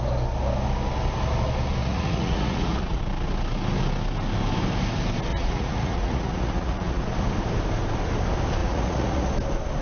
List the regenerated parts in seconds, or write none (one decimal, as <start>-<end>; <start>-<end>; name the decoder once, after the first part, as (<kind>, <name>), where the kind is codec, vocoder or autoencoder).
1.8-3.0 (vocoder, Vocos); 5.3-7.0; 8.6-9.3